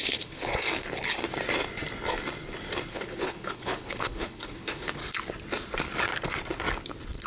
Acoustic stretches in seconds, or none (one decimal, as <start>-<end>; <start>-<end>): 0.5-2.9; 5.0-7.3